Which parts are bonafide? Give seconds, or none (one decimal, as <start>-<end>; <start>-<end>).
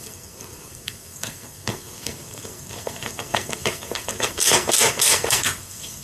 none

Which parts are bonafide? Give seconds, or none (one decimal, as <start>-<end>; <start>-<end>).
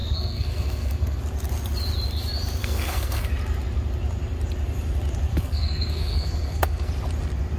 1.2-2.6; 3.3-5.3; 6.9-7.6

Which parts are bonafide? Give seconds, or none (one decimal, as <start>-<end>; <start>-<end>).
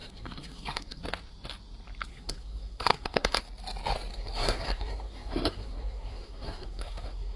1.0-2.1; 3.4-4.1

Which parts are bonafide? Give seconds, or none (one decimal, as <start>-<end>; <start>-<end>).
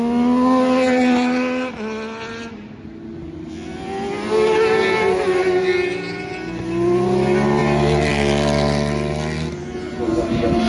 0.0-10.7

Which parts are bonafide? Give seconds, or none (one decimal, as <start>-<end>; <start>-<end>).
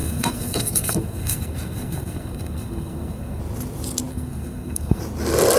3.4-4.1; 5.0-5.6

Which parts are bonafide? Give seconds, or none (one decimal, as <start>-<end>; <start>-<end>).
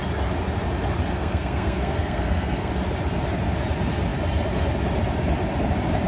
0.0-1.1; 2.7-6.1